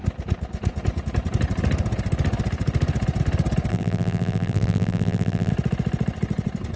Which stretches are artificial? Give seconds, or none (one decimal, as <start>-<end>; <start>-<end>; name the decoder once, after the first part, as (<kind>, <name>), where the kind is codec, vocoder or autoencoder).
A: 3.7-5.5 (vocoder, BigVGAN v2)